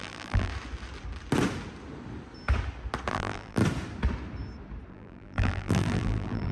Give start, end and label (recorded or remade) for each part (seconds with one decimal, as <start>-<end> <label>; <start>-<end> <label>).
0.0-0.5 remade; 0.5-3.1 recorded; 3.1-3.6 remade; 3.6-4.9 recorded; 4.9-6.5 remade